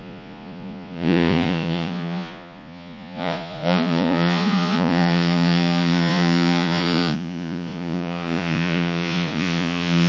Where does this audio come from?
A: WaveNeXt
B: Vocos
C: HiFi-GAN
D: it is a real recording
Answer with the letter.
B